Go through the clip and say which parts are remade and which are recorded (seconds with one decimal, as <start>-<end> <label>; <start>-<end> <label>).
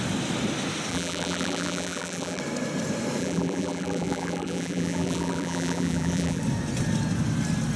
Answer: 0.0-0.9 recorded; 0.9-2.4 remade; 2.4-3.2 recorded; 3.2-6.4 remade; 6.4-7.8 recorded